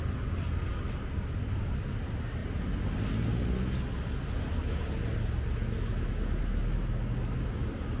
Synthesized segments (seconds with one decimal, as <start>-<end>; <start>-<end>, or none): none